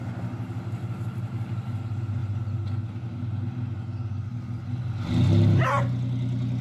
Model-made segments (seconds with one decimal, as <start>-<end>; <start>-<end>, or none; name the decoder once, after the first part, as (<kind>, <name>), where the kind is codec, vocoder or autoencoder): none